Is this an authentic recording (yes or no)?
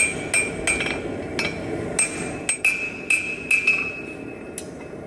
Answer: yes